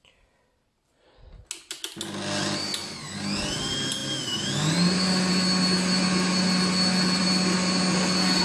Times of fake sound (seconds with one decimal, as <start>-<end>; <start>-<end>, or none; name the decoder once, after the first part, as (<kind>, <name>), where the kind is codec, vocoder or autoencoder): none